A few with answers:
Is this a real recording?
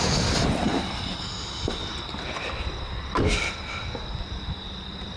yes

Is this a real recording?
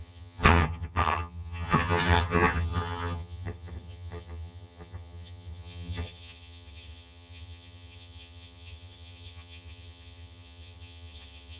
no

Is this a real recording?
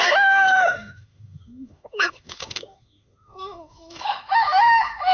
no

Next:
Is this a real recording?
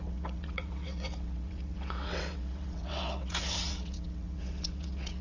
no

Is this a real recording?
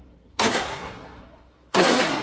no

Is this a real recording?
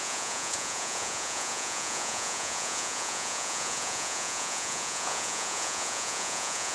no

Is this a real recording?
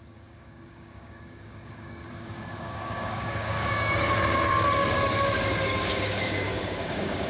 no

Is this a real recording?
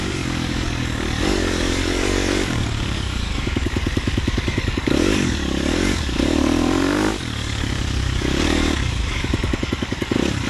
no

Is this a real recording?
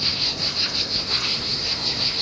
no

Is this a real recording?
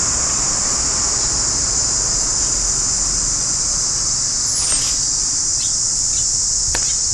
yes